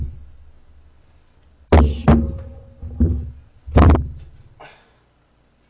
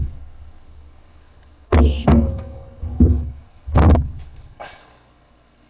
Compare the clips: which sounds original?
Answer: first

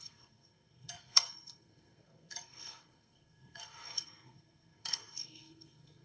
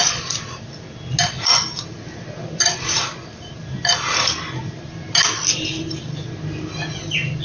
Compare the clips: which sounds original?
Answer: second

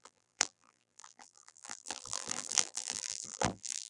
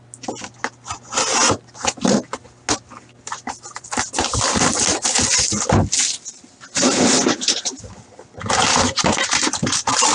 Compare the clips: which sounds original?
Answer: second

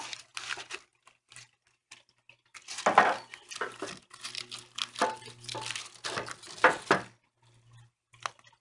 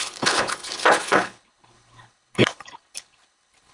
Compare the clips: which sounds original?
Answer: first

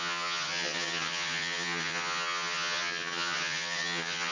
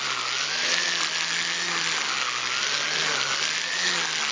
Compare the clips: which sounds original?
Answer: second